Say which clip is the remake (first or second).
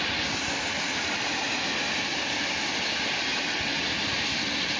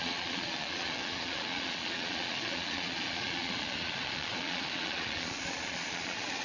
second